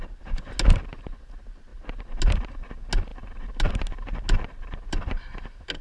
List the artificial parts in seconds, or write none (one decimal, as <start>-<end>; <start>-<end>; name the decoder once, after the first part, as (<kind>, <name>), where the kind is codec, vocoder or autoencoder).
none